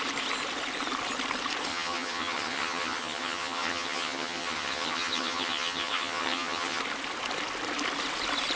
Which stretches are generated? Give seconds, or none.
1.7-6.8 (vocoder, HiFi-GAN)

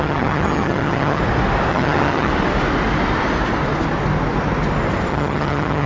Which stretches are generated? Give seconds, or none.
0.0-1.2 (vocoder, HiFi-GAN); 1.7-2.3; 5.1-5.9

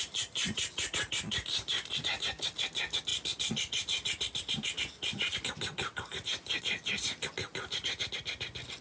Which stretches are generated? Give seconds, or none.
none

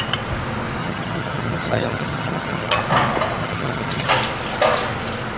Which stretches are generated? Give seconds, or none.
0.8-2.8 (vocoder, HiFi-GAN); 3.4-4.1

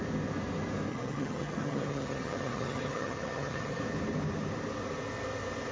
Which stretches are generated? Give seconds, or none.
0.9-3.8 (vocoder, HiFi-GAN)

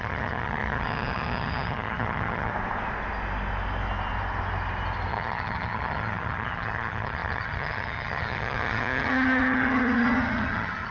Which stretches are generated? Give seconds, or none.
0.0-2.5 (vocoder, HiFi-GAN); 5.1-10.9

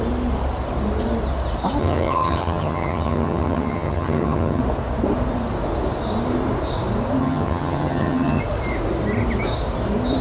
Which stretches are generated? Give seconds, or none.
1.8-4.6 (vocoder, HiFi-GAN); 7.2-8.4

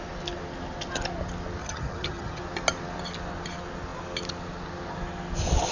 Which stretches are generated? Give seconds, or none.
1.6-2.4 (vocoder, HiFi-GAN)